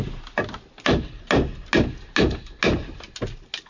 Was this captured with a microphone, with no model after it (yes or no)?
yes